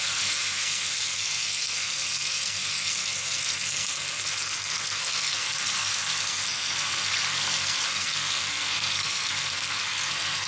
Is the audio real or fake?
fake